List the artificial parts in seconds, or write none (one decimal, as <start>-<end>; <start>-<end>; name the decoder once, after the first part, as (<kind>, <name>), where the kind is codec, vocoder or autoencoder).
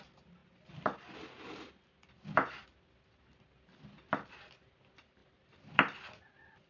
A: 5.2-6.7 (vocoder, BigVGAN v2)